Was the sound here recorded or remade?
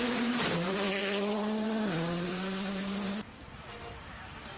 remade